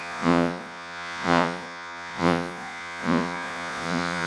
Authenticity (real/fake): fake